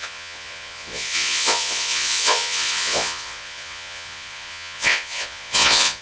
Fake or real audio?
fake